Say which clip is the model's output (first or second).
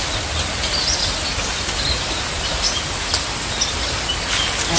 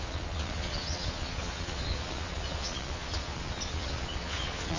second